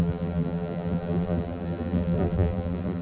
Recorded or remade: remade